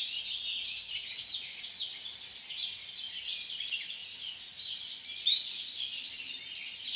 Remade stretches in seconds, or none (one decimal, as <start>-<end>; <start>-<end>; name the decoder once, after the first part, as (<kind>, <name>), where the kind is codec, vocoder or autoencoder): none

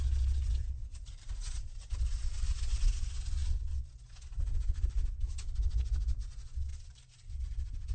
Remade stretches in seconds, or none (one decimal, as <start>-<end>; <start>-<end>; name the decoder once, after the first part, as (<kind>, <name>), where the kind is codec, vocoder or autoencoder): 0.9-1.7 (vocoder, BigVGAN v2); 6.7-7.3

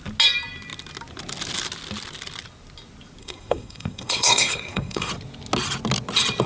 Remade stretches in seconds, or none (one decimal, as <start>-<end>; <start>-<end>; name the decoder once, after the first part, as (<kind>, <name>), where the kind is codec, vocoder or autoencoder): 3.2-5.1 (codec, SNAC)